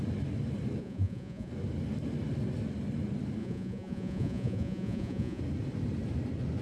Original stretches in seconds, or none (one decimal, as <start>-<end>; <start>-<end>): 0.0-0.8; 1.5-3.4; 5.4-6.6

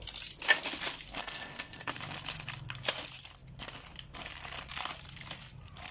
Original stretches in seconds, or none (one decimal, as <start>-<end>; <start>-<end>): 0.0-1.2; 1.9-5.9

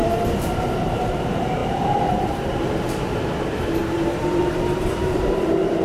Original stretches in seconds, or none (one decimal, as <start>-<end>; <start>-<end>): none

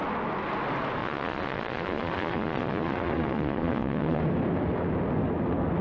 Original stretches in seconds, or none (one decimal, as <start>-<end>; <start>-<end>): 0.0-1.0; 4.2-5.8

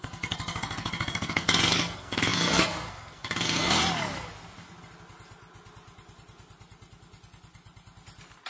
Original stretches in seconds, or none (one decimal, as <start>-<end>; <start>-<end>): 3.8-8.5

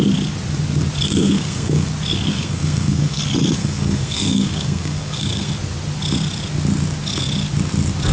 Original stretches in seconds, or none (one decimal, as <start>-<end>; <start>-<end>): 0.0-1.1; 1.9-2.3; 3.2-3.6; 5.5-8.1